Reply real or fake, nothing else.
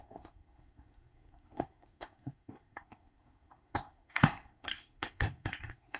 fake